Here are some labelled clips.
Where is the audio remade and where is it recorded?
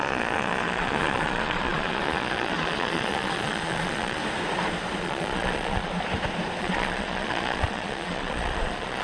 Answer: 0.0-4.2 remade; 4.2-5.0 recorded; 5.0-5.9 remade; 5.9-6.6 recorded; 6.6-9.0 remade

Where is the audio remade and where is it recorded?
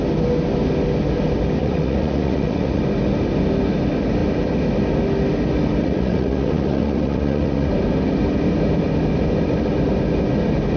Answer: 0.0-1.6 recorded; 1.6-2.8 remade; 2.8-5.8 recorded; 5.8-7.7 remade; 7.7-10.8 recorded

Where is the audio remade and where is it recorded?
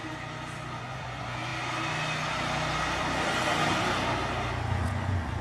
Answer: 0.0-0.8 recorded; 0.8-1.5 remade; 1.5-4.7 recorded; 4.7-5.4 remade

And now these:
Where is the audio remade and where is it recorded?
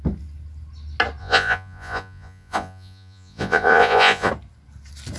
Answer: 0.0-1.2 recorded; 1.2-4.3 remade; 4.3-5.2 recorded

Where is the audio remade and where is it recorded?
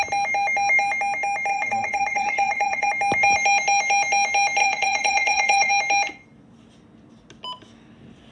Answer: 0.0-1.5 recorded; 1.5-2.9 remade; 2.9-4.6 recorded; 4.6-5.7 remade; 5.7-8.3 recorded